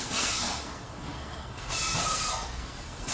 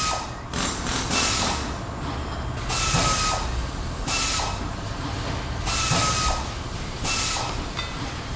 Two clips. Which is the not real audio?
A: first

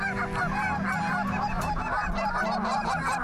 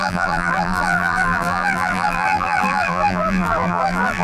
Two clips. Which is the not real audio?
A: second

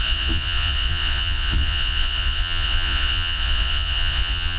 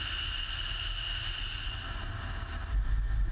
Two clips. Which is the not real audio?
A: first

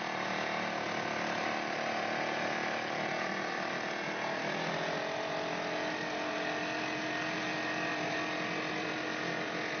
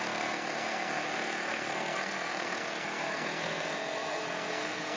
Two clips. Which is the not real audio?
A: second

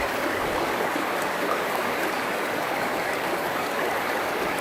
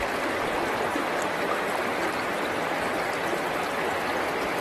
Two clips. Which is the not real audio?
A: first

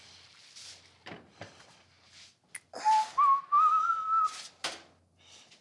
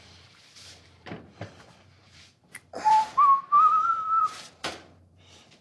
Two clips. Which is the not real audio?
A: second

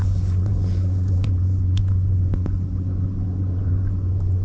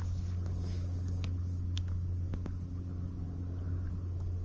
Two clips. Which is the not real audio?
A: first